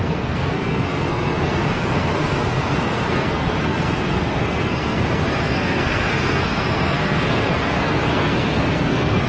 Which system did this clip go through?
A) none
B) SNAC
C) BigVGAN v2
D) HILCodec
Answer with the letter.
B